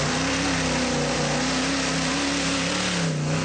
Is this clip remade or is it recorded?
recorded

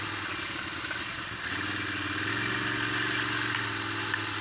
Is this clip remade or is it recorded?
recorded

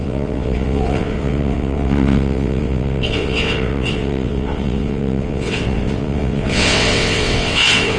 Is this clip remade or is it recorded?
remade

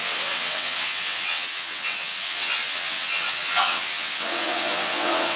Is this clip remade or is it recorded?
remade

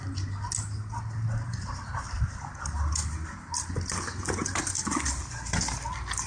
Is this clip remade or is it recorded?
recorded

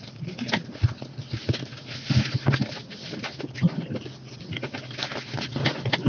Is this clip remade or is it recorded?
recorded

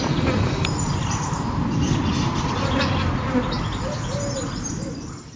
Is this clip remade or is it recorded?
recorded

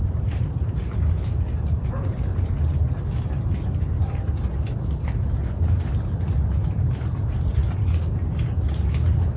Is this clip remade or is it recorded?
recorded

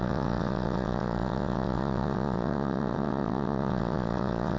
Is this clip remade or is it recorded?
remade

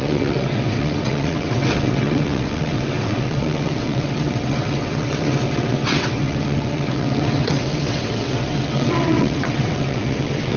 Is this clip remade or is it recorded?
remade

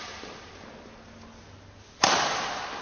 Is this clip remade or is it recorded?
recorded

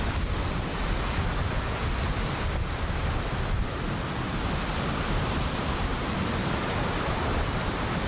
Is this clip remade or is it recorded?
recorded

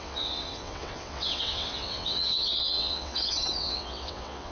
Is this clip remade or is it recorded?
remade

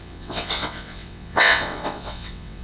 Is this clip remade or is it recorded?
remade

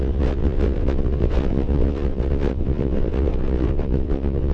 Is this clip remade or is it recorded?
remade